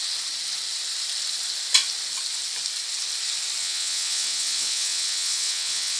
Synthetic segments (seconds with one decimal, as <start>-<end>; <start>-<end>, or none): 3.6-6.0